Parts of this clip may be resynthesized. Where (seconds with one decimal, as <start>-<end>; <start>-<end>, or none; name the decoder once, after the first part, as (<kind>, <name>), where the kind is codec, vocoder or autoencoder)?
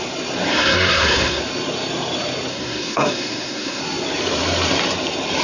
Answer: 0.5-1.4 (codec, SNAC); 2.5-3.8